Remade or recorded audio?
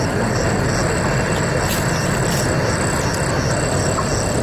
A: recorded